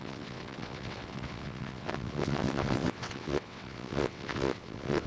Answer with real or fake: fake